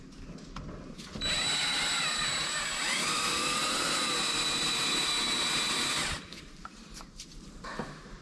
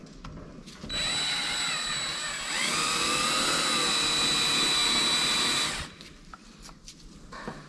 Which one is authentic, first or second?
second